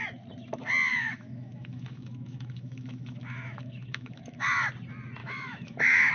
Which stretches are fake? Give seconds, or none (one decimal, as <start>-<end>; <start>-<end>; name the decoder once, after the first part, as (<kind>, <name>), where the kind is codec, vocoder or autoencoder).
0.9-4.6 (autoencoder, DAC-VAE); 5.2-6.1